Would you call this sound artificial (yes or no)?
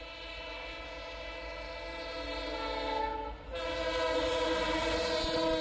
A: no